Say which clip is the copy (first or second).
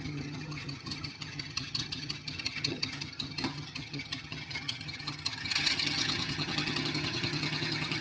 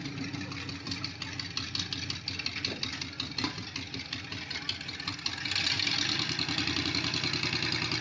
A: first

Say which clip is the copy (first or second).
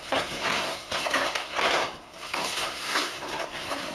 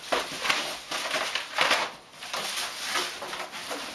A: first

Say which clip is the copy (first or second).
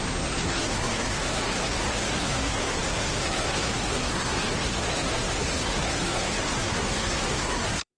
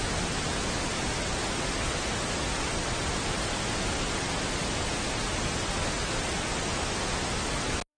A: first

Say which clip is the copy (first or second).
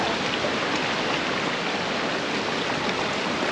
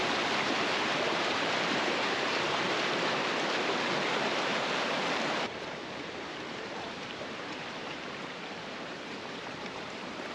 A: second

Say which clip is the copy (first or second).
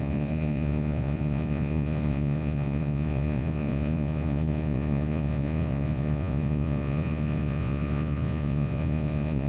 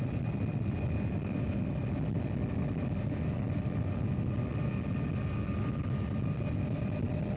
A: first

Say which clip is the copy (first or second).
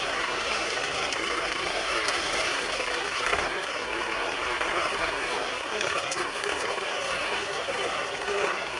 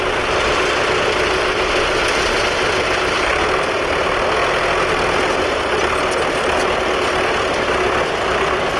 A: first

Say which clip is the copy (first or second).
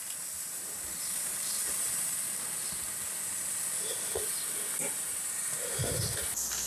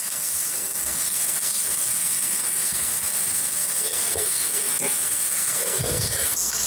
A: second